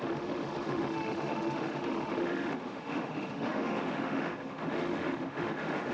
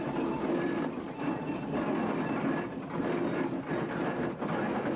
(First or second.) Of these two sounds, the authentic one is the second